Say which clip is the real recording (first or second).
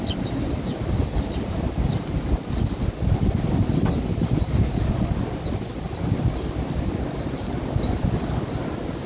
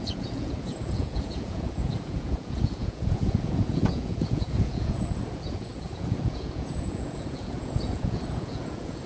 first